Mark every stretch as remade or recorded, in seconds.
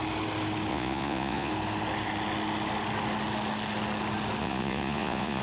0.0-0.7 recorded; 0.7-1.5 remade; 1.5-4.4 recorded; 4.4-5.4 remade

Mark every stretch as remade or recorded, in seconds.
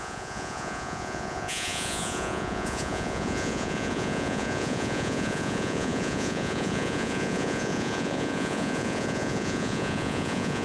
0.0-10.6 remade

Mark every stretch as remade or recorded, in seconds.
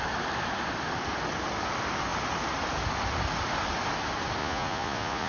0.0-4.4 recorded; 4.4-5.3 remade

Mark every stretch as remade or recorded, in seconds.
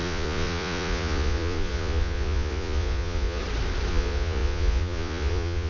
0.0-3.4 remade; 3.4-3.9 recorded; 3.9-5.7 remade